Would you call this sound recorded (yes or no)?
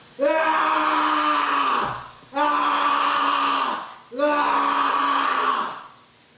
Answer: yes